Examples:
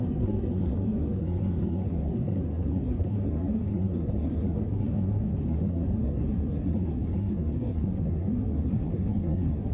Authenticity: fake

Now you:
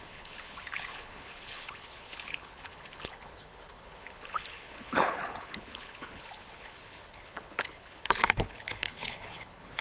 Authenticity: fake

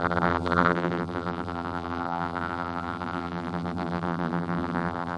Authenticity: fake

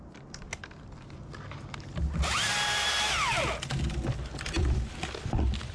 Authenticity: real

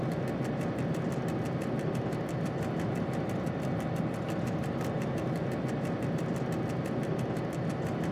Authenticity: real